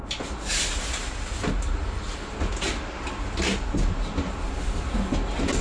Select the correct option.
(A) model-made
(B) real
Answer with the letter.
B